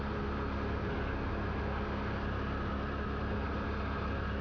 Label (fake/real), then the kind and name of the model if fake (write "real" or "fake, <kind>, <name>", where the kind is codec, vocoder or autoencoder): real